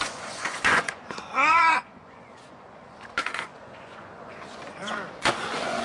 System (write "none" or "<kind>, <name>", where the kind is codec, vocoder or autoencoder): vocoder, Vocos